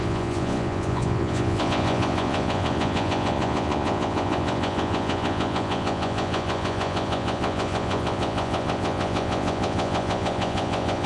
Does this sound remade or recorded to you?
remade